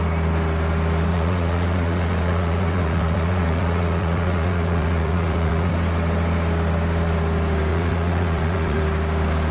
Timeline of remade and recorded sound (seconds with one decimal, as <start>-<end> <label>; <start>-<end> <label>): 0.0-1.1 recorded; 1.1-5.7 remade; 5.7-7.7 recorded; 7.7-8.8 remade; 8.8-9.5 recorded